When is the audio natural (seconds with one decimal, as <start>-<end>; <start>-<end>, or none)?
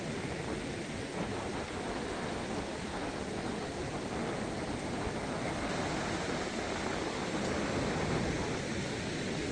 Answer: 0.0-9.5